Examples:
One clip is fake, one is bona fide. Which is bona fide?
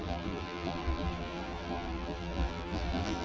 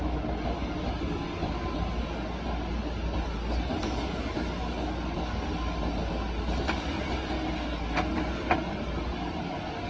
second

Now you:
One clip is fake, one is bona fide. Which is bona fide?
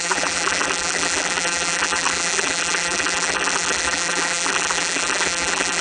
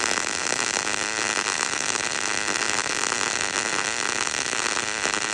second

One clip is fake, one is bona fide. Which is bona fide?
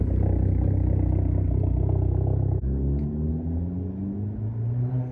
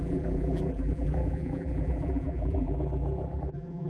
first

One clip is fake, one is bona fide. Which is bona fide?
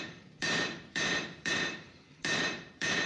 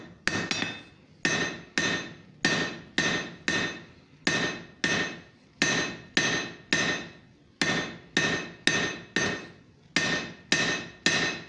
second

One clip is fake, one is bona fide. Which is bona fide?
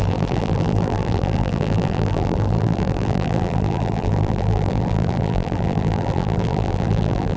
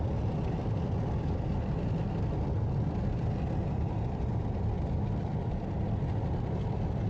second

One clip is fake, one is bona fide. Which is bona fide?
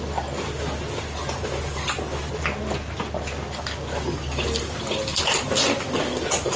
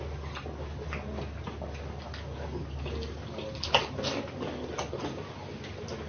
second